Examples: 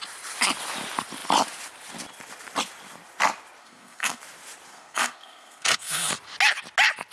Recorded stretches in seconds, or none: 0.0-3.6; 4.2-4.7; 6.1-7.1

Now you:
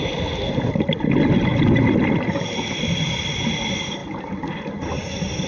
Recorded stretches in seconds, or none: 0.0-5.5

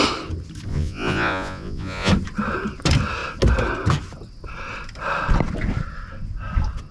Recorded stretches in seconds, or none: 0.0-0.7; 2.1-6.9

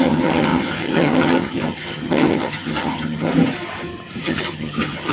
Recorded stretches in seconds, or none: 3.3-4.2

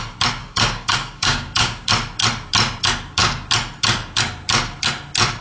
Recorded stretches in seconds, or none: 0.0-0.4; 1.9-5.4

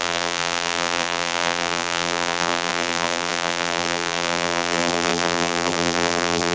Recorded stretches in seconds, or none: none